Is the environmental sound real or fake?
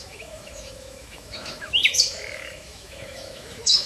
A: fake